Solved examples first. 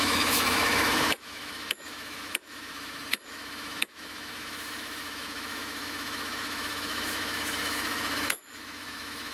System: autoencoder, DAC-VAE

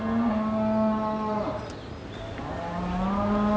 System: none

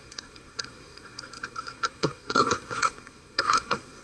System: codec, SNAC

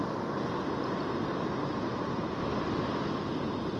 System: none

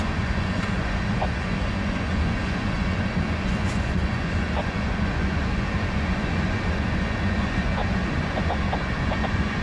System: vocoder, Vocos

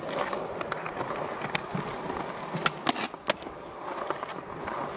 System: none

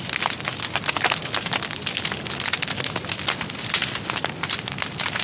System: none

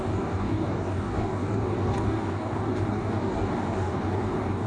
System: codec, DAC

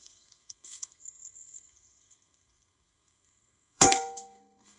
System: codec, SNAC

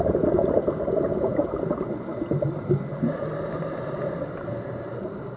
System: none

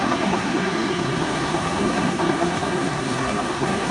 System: codec, SNAC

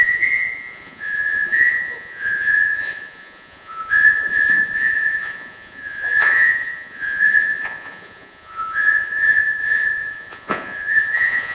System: vocoder, Vocos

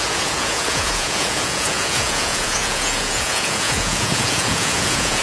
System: vocoder, Vocos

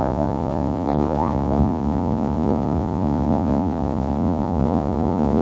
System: vocoder, Vocos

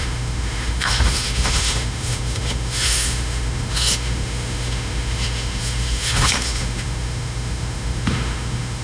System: autoencoder, DAC-VAE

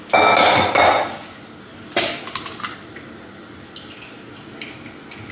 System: none